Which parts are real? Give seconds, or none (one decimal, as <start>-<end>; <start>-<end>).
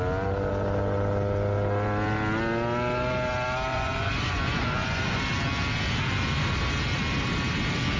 0.0-3.7; 5.2-8.0